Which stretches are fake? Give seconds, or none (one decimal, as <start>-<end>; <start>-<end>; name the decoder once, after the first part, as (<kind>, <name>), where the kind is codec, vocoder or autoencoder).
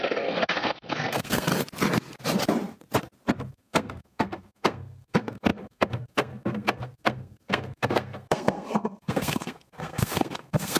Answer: 0.0-1.5 (codec, SNAC); 3.5-10.8